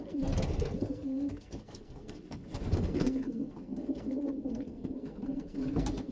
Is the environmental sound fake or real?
fake